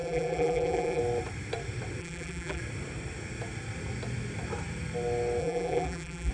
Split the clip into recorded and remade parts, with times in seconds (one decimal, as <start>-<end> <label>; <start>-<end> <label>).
0.0-1.0 remade; 1.0-2.0 recorded; 2.0-2.6 remade; 2.6-5.4 recorded; 5.4-6.3 remade